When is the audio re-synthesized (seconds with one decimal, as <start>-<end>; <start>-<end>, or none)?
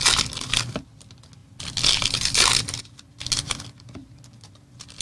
none